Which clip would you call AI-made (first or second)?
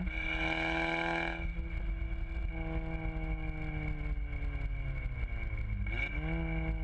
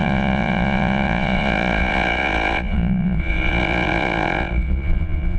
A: second